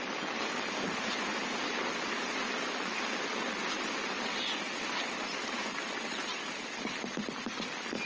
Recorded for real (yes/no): yes